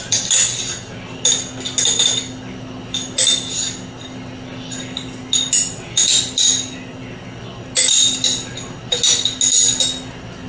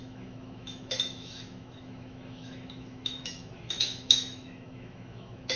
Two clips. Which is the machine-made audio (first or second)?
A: second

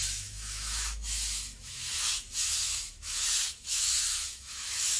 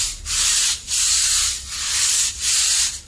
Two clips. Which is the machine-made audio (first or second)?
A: first